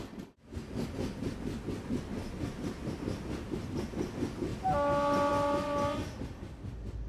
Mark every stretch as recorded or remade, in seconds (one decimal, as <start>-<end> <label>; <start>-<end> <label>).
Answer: 0.0-2.1 recorded; 2.1-2.9 remade; 2.9-7.1 recorded